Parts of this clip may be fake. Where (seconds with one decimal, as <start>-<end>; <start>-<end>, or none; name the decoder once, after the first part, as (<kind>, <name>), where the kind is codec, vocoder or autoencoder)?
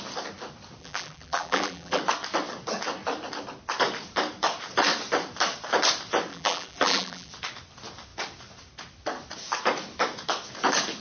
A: 0.8-2.0 (vocoder, BigVGAN v2); 6.3-7.3